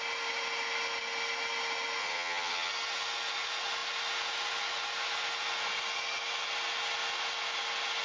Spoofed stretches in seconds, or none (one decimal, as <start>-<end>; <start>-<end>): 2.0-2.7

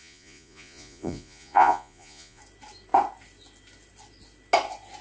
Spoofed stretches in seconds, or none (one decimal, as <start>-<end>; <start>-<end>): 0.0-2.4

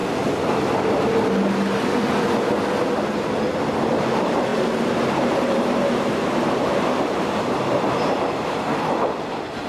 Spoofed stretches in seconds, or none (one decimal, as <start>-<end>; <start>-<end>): 3.9-9.7

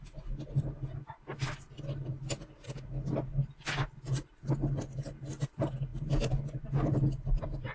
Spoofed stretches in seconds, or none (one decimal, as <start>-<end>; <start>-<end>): none